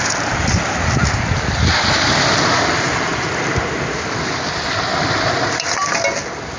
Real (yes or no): yes